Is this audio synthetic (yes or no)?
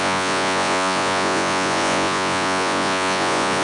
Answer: yes